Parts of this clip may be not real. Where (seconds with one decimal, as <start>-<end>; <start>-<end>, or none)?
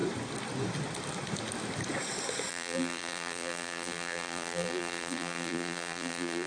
2.5-6.5